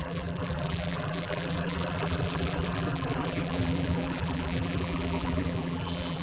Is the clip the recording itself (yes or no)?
no